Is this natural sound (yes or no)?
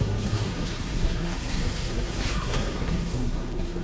no